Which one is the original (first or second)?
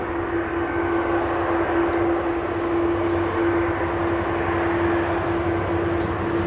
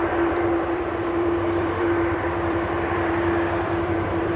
first